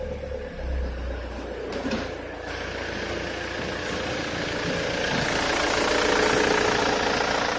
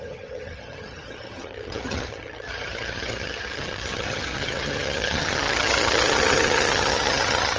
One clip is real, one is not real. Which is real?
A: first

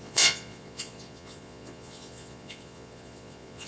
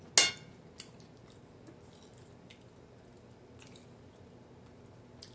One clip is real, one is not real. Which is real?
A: second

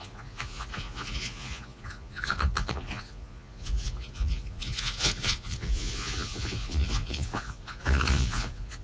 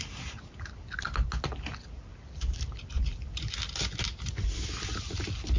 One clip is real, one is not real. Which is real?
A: second